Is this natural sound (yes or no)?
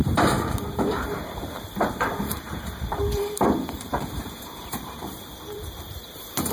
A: no